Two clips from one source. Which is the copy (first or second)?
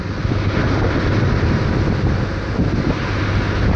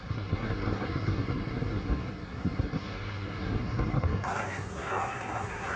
second